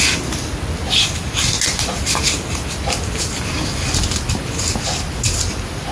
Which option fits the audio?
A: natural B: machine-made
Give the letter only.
A